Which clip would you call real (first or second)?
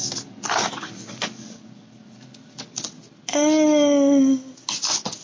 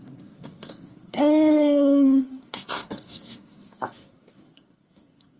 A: first